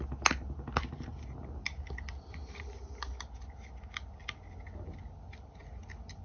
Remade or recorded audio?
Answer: recorded